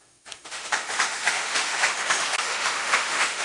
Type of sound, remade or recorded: remade